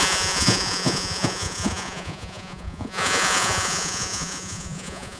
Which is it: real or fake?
fake